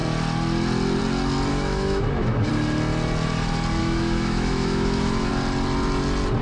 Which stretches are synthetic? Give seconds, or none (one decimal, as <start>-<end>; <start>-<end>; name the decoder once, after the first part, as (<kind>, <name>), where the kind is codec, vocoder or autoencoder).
1.5-2.5 (autoencoder, DAC-VAE); 3.8-5.3